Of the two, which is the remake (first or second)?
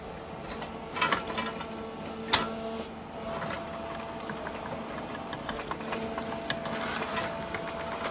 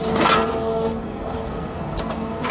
second